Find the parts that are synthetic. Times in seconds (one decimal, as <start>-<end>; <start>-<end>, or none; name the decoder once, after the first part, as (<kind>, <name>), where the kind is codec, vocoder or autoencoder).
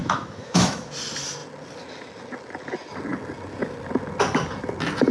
0.0-0.9 (autoencoder, DAC-VAE)